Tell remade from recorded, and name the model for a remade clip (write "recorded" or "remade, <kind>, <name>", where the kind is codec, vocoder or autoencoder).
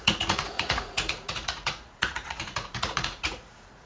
remade, vocoder, Vocos